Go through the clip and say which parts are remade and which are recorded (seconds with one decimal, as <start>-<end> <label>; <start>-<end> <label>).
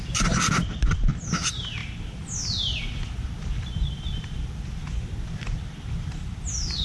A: 0.0-6.8 recorded